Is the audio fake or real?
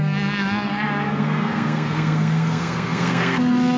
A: fake